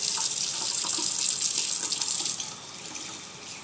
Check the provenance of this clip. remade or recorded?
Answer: recorded